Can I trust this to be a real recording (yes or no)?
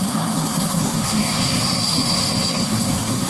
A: no